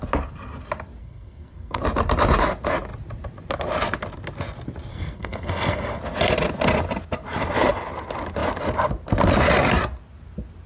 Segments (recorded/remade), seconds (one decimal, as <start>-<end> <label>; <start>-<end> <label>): 0.0-1.0 recorded; 1.0-1.8 remade; 1.8-4.9 recorded; 4.9-6.0 remade; 6.0-10.7 recorded